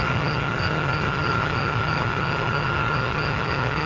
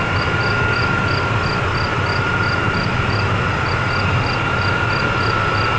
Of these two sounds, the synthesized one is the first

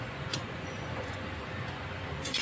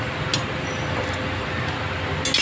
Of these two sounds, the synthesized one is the first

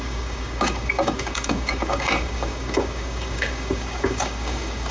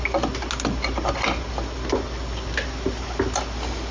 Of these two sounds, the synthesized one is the first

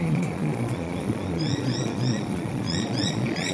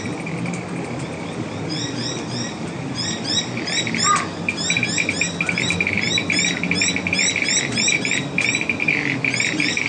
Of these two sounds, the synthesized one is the first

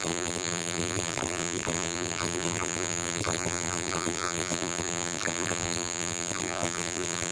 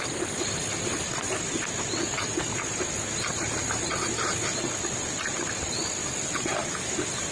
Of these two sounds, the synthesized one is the first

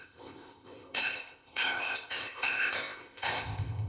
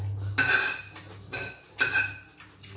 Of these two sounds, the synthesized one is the first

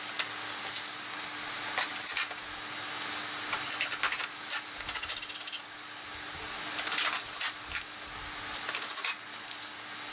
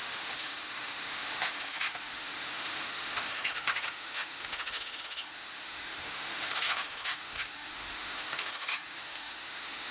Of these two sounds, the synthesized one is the second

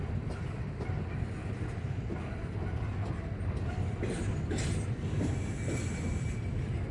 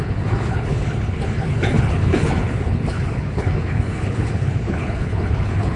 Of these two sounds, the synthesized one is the second